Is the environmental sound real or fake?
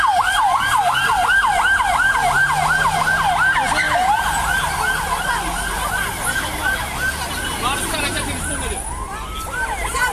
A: real